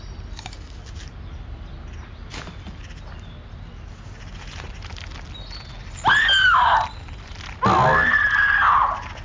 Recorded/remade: recorded